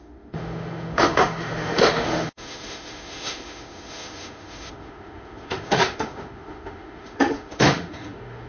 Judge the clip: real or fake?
fake